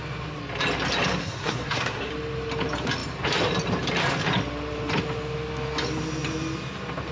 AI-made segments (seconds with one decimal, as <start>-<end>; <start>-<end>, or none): 1.2-2.1